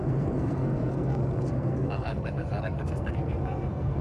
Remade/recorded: remade